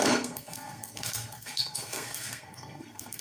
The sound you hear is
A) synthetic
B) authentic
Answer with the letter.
A